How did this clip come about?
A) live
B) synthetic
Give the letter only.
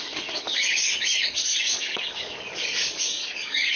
B